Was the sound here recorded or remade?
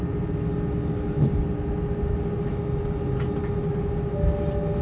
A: recorded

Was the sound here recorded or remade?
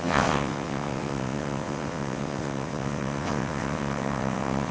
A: remade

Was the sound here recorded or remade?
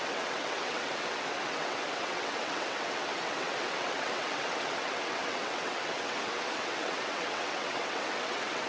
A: remade